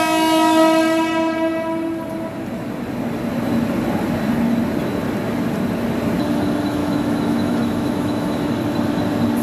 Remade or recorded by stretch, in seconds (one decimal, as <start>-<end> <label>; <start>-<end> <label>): 0.0-6.8 recorded; 6.8-8.5 remade; 8.5-9.4 recorded